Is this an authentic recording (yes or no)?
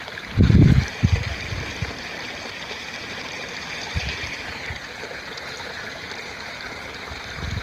no